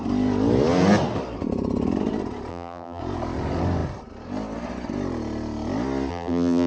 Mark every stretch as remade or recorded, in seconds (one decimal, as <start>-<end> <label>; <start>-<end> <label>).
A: 0.0-2.5 recorded; 2.5-3.0 remade; 3.0-6.1 recorded; 6.1-6.7 remade